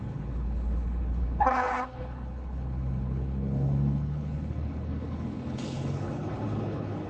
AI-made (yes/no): yes